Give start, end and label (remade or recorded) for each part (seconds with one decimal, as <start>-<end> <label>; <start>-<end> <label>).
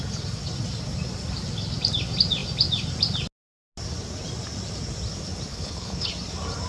0.0-5.5 recorded; 5.5-6.1 remade; 6.1-6.7 recorded